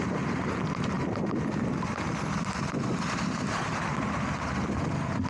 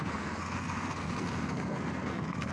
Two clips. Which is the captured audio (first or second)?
first